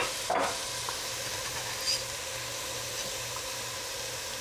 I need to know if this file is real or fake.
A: real